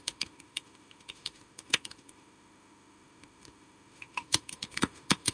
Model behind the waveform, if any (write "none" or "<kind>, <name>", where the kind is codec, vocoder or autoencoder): autoencoder, DAC-VAE